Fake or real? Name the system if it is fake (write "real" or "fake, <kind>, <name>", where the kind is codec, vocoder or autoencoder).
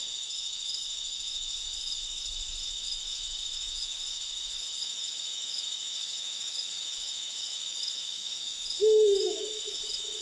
fake, autoencoder, DAC-VAE